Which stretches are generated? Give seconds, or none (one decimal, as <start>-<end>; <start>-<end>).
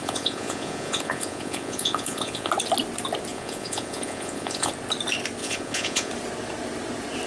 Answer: 0.0-2.5; 3.3-4.7; 5.4-6.1